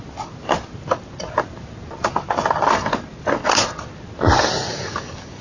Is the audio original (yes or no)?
yes